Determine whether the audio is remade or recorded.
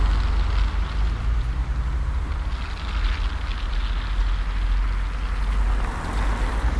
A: recorded